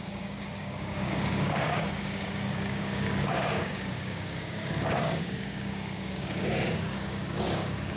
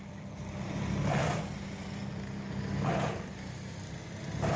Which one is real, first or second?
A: second